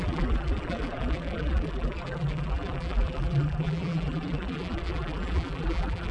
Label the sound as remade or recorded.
remade